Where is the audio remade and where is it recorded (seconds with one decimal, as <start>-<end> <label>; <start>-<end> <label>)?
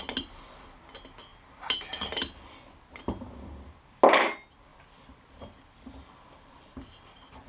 0.0-7.5 recorded